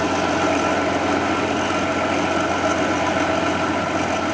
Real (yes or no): yes